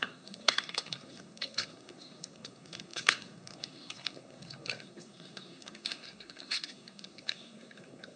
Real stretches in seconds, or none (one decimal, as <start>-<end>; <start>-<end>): none